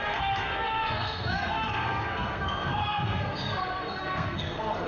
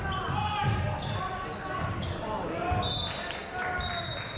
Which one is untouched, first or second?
second